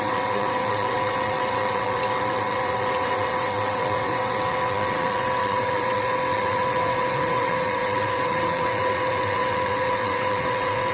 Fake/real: fake